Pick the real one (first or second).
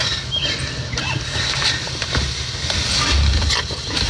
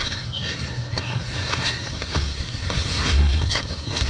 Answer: first